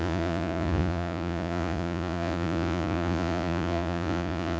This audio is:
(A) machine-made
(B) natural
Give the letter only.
A